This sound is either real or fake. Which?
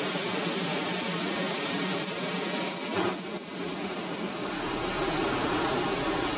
real